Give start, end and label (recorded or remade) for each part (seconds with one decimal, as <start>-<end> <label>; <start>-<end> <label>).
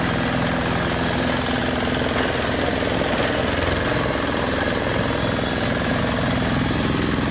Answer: 0.0-7.3 recorded